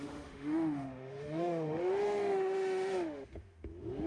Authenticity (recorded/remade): remade